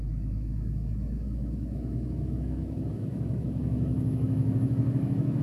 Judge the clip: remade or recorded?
remade